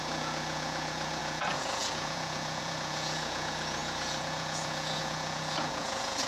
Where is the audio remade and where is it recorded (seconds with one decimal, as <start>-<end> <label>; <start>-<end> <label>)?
0.0-6.3 remade